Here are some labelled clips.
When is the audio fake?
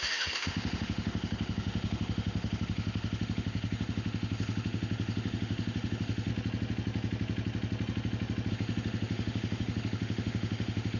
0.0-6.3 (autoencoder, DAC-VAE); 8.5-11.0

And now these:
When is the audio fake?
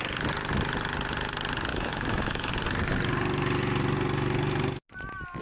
1.7-2.5 (autoencoder, DAC-VAE)